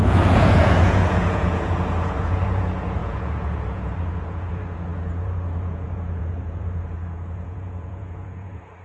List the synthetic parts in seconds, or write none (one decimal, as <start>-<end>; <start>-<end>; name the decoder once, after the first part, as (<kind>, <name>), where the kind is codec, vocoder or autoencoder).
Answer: 0.0-8.8 (vocoder, Vocos)